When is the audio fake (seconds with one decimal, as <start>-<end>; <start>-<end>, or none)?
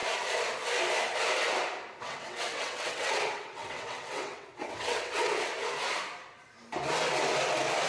2.0-5.5